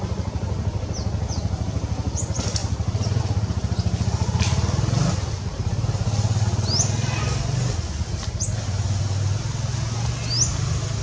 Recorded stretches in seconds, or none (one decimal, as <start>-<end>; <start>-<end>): 0.0-11.0